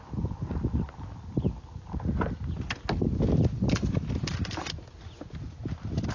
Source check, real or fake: real